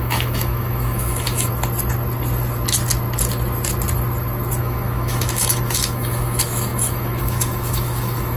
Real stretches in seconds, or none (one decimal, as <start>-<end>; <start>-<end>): 1.5-4.6